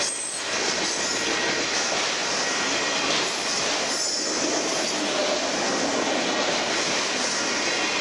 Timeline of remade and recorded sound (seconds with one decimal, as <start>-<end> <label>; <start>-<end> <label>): 0.0-8.0 recorded